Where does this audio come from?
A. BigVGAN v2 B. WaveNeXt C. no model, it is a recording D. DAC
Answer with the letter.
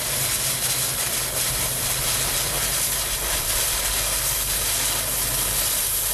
C